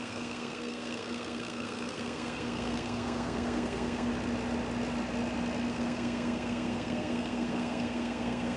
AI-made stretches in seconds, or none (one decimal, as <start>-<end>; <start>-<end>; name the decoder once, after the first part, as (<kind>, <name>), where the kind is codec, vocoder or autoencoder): 0.0-4.1 (codec, SNAC); 5.7-8.6